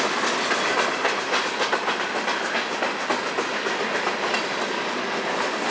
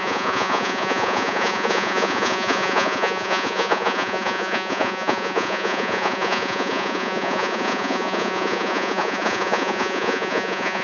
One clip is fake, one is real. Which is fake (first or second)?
second